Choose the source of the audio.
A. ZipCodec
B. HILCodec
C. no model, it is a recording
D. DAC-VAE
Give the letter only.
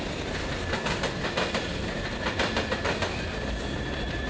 C